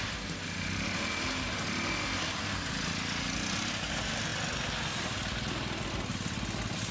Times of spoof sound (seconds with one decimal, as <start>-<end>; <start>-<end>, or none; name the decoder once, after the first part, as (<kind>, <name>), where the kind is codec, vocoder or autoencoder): none